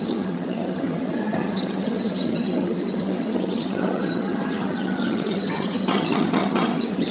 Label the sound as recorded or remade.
remade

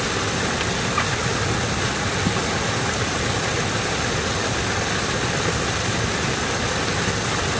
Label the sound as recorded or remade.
recorded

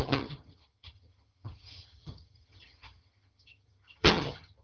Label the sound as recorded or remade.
remade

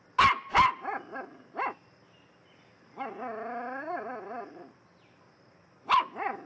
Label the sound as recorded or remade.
recorded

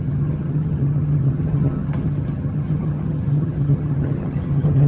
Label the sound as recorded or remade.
remade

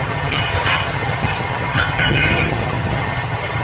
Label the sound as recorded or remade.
remade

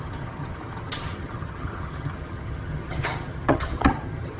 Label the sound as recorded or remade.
remade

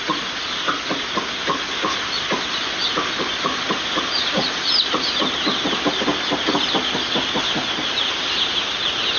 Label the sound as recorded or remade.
recorded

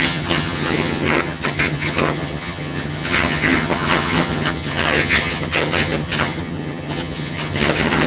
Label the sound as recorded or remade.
remade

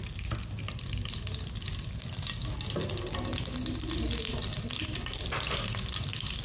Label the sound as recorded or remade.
recorded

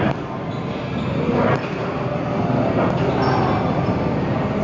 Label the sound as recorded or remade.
recorded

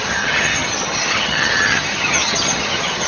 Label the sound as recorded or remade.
remade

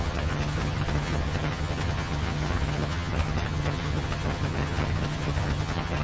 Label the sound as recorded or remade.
remade